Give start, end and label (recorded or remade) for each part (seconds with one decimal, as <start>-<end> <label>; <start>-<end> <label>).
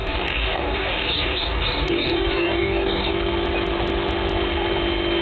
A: 0.0-3.1 remade; 3.1-5.2 recorded